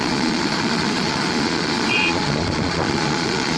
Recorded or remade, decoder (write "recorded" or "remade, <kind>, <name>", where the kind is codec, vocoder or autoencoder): remade, vocoder, Vocos